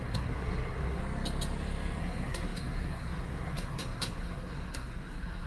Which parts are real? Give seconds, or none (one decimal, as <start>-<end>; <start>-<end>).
1.0-2.0